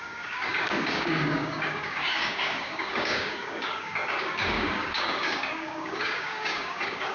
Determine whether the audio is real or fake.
fake